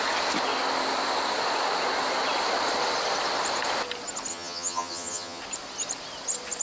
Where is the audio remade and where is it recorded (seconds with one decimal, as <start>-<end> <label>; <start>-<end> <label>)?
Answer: 0.0-4.3 recorded; 4.3-5.4 remade; 5.4-6.6 recorded